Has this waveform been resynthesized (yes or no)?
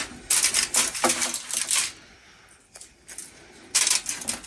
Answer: no